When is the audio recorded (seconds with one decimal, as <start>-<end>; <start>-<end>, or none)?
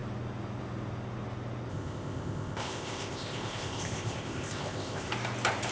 0.0-1.7; 5.1-5.7